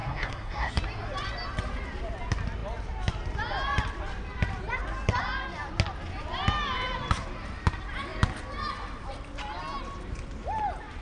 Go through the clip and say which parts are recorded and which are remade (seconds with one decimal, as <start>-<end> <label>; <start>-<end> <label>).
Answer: 0.0-0.7 remade; 0.7-11.0 recorded